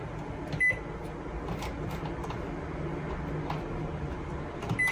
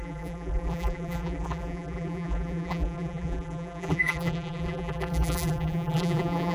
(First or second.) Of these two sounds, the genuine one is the first